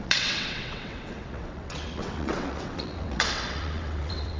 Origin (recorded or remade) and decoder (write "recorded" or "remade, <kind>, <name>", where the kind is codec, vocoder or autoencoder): remade, vocoder, WaveNeXt